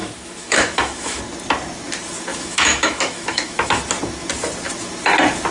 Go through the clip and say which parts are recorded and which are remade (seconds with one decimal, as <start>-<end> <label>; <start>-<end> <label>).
0.0-1.2 remade; 1.2-2.3 recorded; 2.3-3.8 remade; 3.8-5.5 recorded